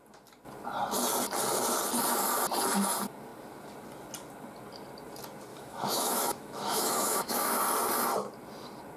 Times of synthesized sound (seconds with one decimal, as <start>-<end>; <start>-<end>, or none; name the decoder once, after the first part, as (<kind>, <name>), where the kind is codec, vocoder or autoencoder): 5.5-7.6 (autoencoder, DAC-VAE)